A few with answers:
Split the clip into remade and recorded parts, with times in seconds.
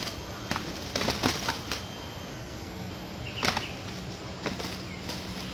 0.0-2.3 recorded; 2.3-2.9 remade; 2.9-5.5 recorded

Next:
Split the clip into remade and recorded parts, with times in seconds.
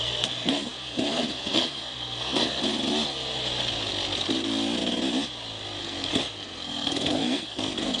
0.0-2.6 remade; 2.6-5.8 recorded; 5.8-8.0 remade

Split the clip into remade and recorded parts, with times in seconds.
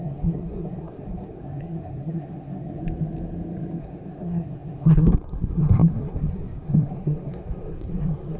0.0-2.8 remade; 2.8-3.8 recorded; 3.8-8.4 remade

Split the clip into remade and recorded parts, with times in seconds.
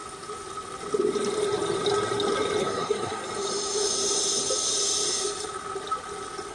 0.0-2.6 recorded; 2.6-3.2 remade; 3.2-6.5 recorded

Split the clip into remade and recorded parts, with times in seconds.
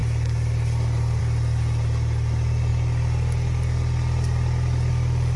0.0-5.4 recorded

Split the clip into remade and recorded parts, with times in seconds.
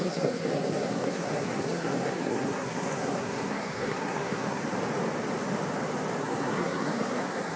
0.0-4.6 remade; 4.6-6.2 recorded; 6.2-7.6 remade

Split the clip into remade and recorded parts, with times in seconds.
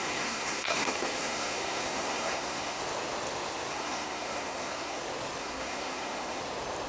0.0-2.8 remade; 2.8-3.7 recorded; 3.7-5.0 remade; 5.0-5.4 recorded; 5.4-6.4 remade; 6.4-6.9 recorded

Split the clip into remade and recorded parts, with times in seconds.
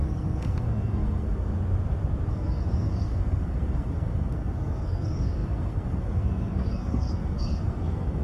0.0-1.5 remade; 1.5-2.3 recorded; 2.3-8.2 remade